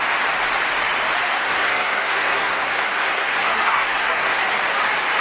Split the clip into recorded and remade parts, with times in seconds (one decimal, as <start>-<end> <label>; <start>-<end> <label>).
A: 0.0-1.3 recorded; 1.3-4.4 remade; 4.4-5.2 recorded